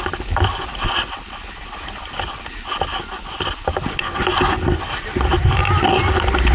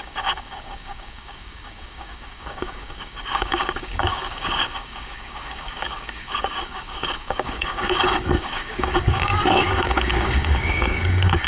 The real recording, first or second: first